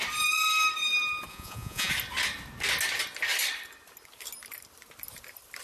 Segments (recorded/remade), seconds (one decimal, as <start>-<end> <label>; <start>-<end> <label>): 0.0-1.3 recorded; 1.3-1.9 remade; 1.9-5.6 recorded